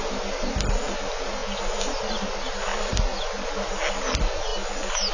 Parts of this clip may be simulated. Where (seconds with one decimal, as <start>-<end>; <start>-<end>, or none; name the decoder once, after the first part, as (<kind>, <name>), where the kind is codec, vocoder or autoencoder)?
none